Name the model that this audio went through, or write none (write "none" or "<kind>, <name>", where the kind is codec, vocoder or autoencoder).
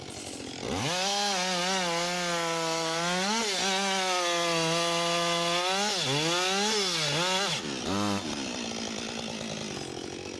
none